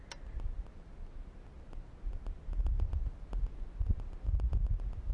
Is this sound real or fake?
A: real